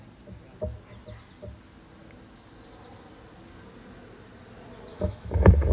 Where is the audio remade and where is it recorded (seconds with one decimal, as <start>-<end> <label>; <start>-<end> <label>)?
0.0-4.9 recorded; 4.9-5.7 remade